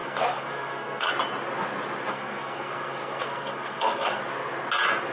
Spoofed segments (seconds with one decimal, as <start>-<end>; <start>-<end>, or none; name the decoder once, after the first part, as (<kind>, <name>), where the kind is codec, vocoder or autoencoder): 0.0-1.1 (codec, SNAC); 2.1-4.2